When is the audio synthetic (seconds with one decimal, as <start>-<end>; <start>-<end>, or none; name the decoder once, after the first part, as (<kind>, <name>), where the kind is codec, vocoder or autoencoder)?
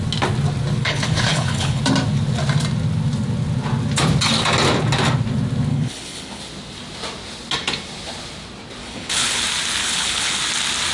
0.8-1.8 (codec, HILCodec); 5.7-6.4; 8.8-9.4; 9.8-10.4